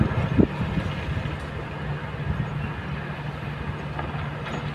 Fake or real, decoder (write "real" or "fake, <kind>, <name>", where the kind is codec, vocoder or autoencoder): real